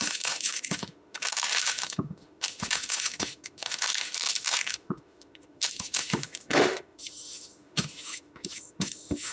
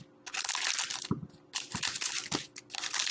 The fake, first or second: first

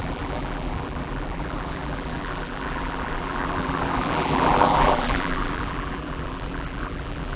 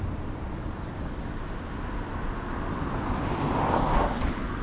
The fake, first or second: first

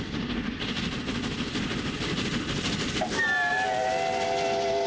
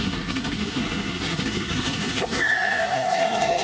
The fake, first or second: second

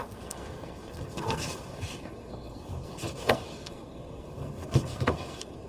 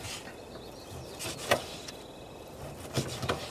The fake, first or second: first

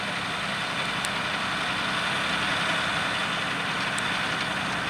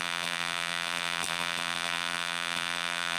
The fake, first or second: second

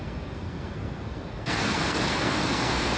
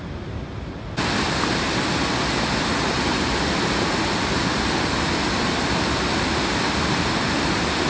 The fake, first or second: first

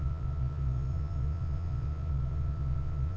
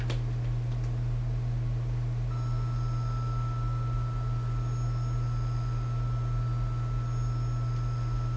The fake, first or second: first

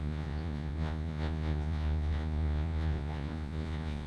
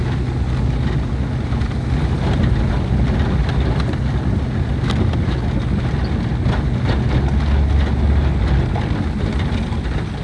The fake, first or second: first